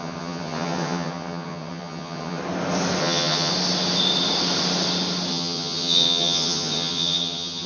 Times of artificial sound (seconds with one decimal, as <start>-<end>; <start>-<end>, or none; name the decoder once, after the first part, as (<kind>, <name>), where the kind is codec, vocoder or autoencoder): 0.0-2.4 (vocoder, HiFi-GAN); 3.0-3.5; 5.3-7.7